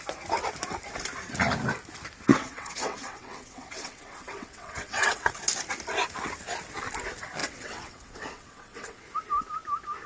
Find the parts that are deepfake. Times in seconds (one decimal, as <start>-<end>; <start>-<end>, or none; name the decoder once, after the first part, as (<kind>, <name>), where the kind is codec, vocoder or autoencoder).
2.3-5.4 (vocoder, WaveNeXt); 7.4-9.0